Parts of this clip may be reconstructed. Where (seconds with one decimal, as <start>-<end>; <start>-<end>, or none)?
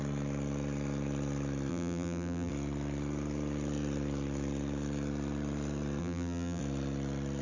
1.7-2.5; 6.0-6.6